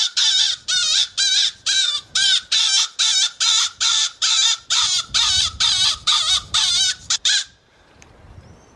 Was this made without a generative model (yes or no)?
no